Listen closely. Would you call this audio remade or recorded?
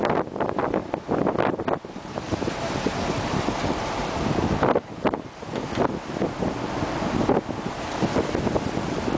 recorded